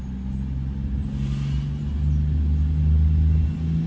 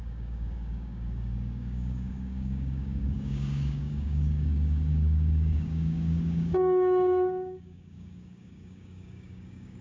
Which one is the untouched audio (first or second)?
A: first